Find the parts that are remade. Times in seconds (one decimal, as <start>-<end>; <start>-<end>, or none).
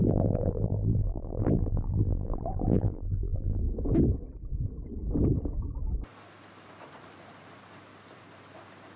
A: 0.0-3.6